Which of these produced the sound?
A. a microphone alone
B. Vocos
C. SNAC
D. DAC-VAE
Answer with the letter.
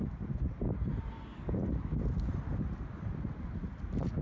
A